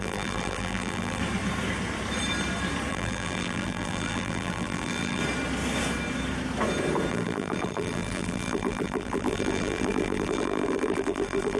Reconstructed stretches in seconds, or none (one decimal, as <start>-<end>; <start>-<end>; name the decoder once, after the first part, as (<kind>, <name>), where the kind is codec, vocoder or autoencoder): 0.0-1.2 (vocoder, BigVGAN v2); 2.9-5.2; 7.1-11.6